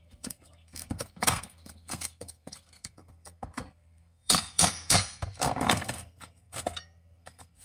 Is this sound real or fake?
fake